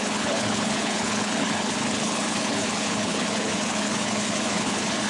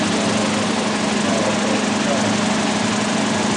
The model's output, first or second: first